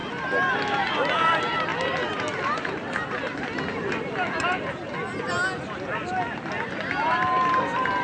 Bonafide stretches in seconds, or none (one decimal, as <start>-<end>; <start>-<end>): 0.0-8.0